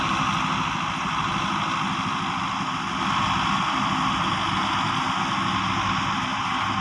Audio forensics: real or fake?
real